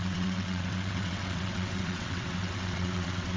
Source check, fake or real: fake